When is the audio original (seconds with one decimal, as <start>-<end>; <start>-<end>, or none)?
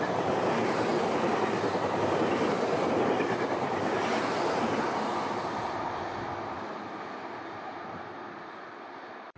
0.0-9.4